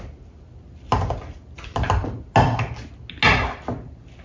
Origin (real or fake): real